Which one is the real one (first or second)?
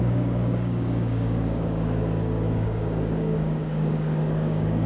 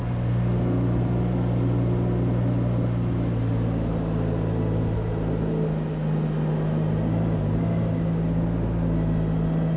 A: second